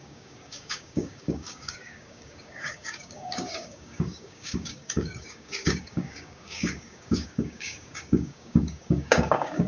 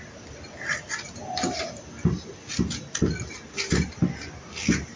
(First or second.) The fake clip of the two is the first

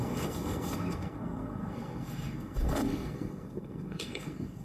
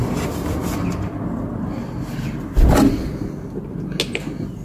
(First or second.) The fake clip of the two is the first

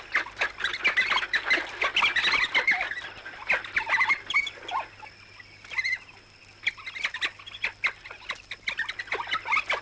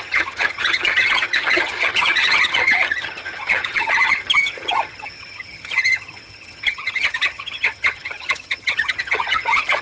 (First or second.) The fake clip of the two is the second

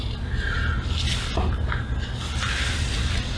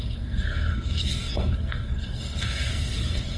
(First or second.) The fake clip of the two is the second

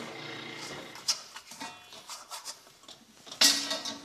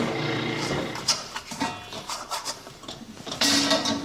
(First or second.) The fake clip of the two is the second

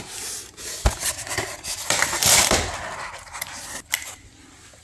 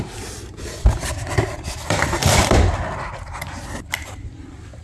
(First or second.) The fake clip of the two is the second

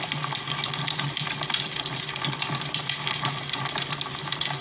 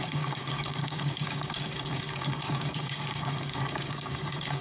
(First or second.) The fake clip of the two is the second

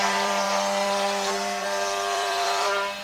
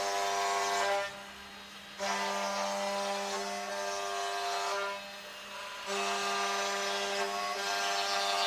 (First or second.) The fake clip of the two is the first